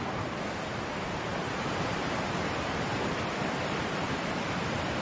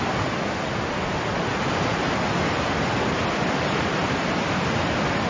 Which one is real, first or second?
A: second